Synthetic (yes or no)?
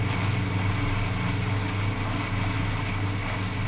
no